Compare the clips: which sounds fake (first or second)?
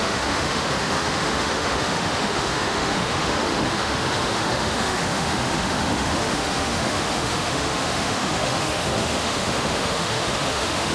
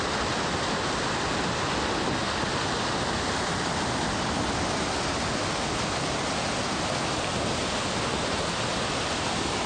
first